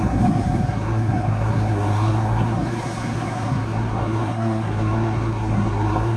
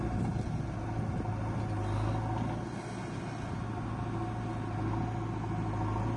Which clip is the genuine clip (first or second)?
second